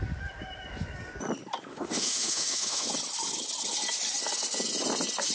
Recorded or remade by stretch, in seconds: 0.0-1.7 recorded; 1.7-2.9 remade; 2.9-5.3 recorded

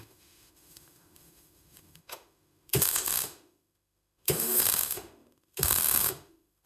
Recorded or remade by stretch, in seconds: 0.0-6.7 remade